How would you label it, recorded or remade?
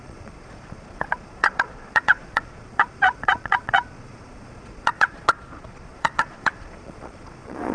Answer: remade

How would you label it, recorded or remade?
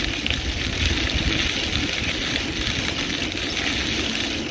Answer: recorded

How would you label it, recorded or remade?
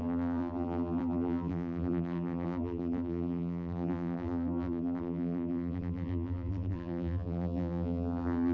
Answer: remade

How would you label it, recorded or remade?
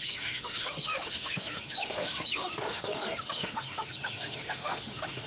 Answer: remade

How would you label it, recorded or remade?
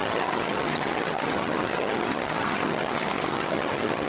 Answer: remade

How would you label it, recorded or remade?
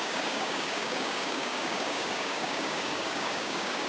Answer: remade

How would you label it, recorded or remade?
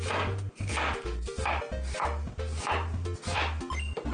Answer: recorded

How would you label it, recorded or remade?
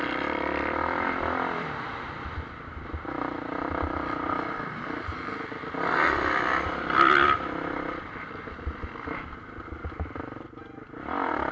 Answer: recorded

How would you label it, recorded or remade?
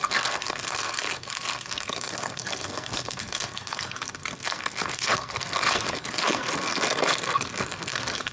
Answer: remade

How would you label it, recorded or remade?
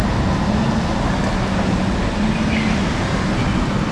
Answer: recorded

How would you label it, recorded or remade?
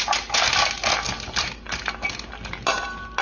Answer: recorded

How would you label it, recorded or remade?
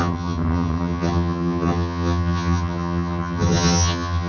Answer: remade